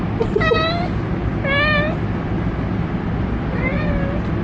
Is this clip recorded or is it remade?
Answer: recorded